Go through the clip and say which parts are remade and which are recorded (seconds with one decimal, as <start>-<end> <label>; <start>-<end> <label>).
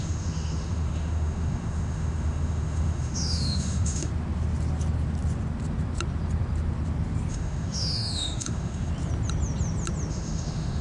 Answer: 0.0-4.1 remade; 4.1-7.3 recorded; 7.3-8.9 remade; 8.9-10.1 recorded; 10.1-10.8 remade